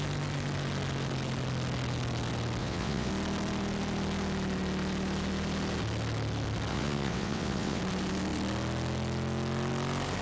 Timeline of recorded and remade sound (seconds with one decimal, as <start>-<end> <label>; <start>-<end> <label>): 0.0-2.6 recorded; 2.6-3.1 remade; 3.1-6.7 recorded; 6.7-7.8 remade; 7.8-10.2 recorded